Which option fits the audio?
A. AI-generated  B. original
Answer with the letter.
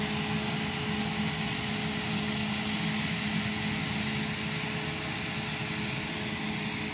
B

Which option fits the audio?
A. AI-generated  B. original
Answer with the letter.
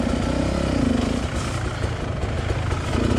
B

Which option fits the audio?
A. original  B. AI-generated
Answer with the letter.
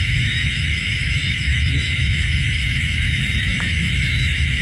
B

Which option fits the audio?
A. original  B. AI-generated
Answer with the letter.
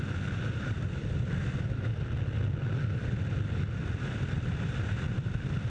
A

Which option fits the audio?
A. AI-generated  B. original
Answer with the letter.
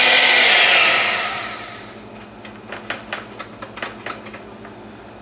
B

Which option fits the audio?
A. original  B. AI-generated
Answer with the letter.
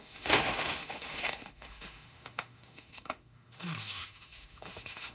B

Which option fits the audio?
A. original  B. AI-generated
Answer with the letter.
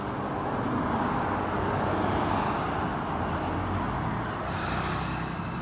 A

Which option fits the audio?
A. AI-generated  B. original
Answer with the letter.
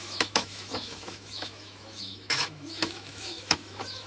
A